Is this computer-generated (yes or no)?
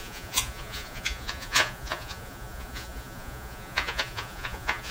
yes